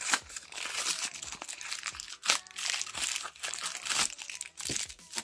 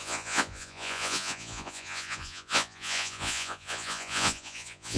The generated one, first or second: second